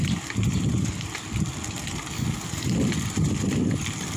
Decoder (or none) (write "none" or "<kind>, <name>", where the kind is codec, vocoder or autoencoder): none